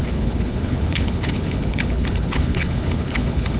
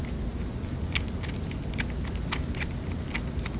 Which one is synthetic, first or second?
first